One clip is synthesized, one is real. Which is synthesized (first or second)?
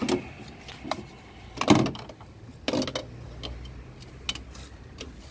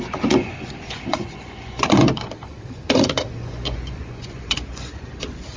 second